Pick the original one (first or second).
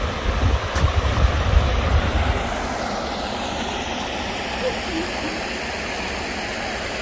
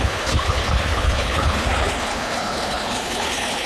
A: first